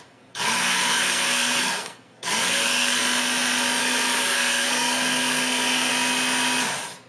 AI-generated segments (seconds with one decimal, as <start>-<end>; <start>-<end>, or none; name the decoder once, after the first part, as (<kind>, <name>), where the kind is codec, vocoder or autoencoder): 0.0-3.0 (codec, SNAC); 3.8-5.9